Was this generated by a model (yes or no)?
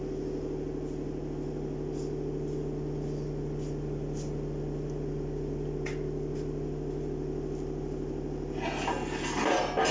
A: no